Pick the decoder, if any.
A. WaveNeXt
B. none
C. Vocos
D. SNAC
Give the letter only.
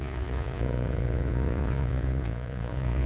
C